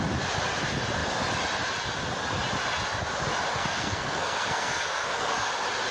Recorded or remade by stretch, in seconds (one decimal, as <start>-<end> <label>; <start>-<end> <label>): 0.0-3.5 recorded; 3.5-5.5 remade; 5.5-5.9 recorded